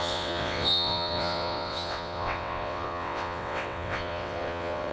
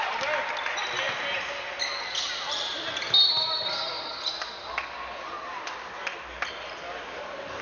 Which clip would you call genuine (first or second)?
second